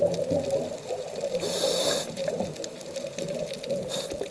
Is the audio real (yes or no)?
yes